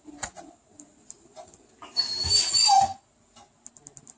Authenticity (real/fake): real